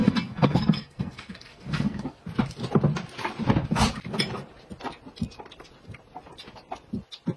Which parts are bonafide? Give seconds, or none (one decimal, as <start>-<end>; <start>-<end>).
2.2-7.4